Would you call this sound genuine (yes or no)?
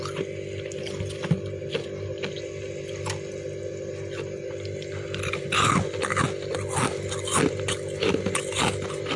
yes